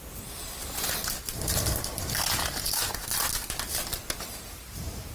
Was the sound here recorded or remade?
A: recorded